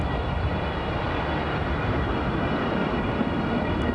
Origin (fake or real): real